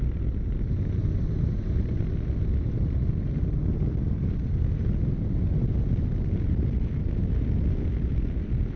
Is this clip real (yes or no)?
yes